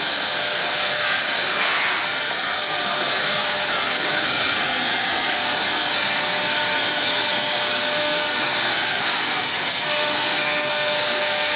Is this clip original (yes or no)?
no